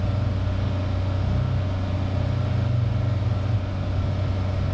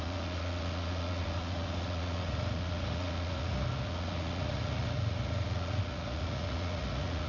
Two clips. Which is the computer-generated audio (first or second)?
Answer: second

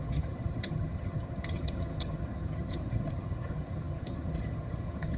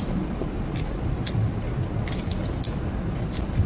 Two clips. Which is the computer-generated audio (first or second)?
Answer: first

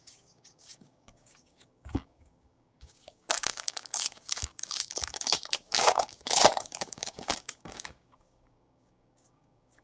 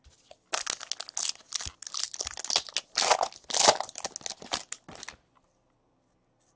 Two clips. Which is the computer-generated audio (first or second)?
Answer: first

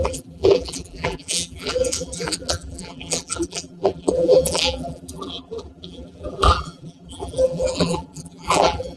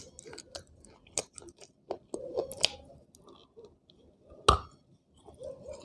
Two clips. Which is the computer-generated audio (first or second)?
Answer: first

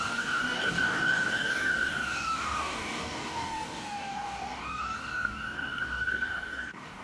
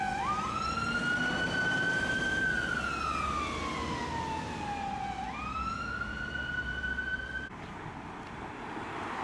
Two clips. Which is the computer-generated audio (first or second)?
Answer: first